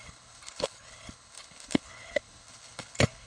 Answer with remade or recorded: remade